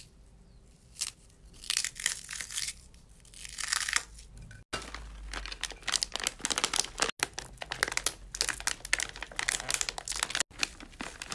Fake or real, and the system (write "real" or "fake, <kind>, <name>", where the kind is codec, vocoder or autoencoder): real